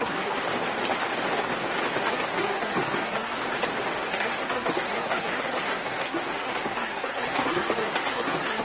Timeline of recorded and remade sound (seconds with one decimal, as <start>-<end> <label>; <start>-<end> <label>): 0.0-0.4 remade; 0.4-2.0 recorded; 2.0-3.4 remade; 3.4-4.1 recorded; 4.1-8.6 remade

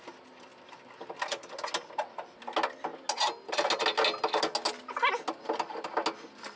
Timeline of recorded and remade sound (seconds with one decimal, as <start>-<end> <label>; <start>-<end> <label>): 0.0-6.6 recorded